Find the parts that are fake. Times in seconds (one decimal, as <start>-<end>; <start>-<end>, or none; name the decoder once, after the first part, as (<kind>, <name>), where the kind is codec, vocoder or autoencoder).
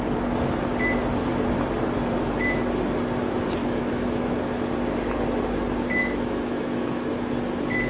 3.6-4.4 (autoencoder, DAC-VAE); 6.0-7.3